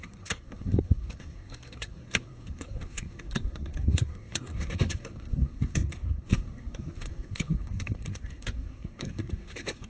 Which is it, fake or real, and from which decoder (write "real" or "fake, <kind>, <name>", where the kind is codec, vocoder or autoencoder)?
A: fake, codec, SNAC